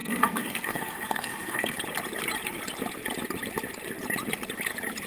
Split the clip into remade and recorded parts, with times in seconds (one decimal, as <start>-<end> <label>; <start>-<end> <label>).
0.0-1.8 remade; 1.8-5.1 recorded